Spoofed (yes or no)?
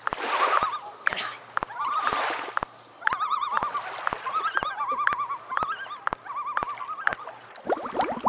no